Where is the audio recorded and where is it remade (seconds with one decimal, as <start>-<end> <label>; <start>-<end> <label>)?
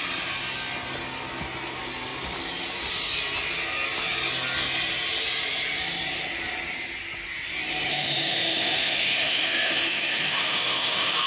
0.0-7.9 recorded; 7.9-11.3 remade